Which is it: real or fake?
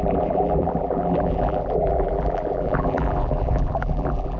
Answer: fake